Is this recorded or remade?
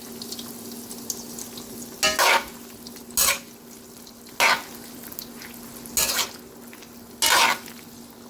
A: recorded